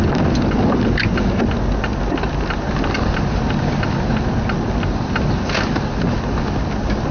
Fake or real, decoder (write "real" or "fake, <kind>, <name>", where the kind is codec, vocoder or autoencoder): real